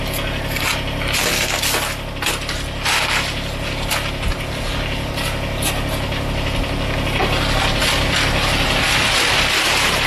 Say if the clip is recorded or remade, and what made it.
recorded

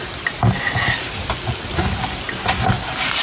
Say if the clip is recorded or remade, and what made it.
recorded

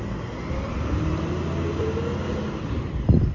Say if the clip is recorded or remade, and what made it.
recorded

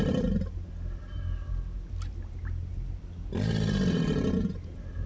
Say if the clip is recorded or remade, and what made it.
recorded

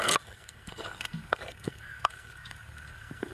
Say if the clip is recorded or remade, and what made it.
remade, codec, SNAC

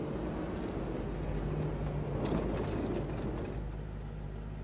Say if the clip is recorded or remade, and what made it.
recorded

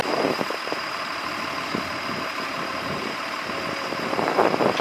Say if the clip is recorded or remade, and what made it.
recorded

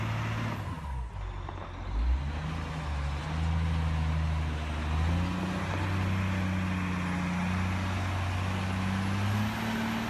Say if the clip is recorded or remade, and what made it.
recorded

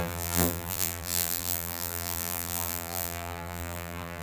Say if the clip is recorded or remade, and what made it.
remade, vocoder, BigVGAN v2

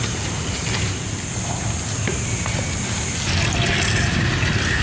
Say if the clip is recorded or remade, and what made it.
recorded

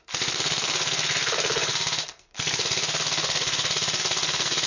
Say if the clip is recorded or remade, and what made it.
remade, codec, SNAC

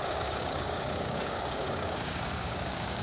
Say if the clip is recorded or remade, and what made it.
remade, codec, DAC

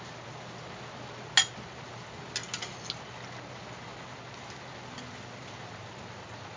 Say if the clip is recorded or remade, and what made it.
recorded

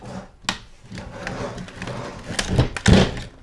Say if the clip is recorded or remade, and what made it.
recorded